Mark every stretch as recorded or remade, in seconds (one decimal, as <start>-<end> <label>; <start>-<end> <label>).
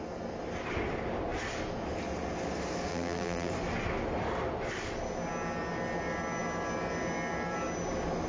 0.0-2.9 recorded; 2.9-3.5 remade; 3.5-8.3 recorded